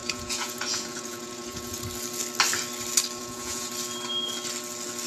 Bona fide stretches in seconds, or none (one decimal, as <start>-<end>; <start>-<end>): 1.8-3.2; 3.7-5.1